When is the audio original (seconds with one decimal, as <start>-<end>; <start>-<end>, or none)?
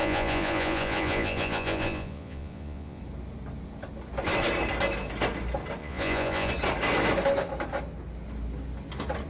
3.0-5.8; 6.5-9.3